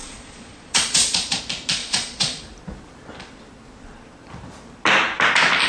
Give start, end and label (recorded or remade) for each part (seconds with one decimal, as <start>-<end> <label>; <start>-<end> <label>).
0.0-1.4 remade; 1.4-1.8 recorded; 1.8-2.4 remade; 2.4-5.7 recorded